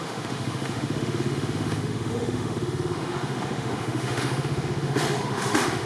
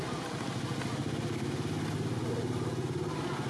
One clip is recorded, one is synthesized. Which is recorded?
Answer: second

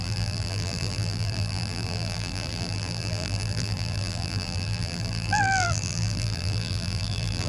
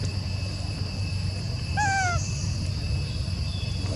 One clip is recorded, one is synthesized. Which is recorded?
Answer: second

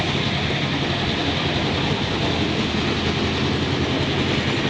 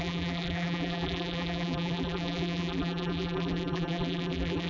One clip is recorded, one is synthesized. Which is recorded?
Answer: first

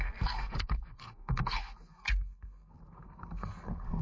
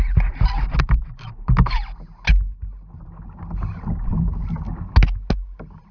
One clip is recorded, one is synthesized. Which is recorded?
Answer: second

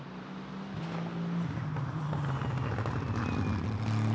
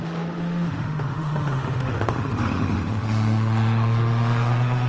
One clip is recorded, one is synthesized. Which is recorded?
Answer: first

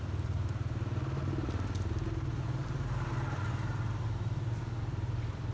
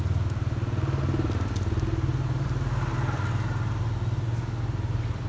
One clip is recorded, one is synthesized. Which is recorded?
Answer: second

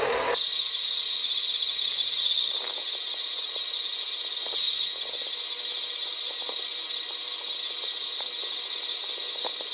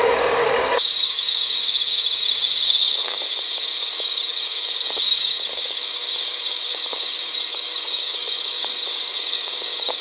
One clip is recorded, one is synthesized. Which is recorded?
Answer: first